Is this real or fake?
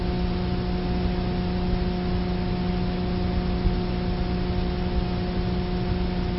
real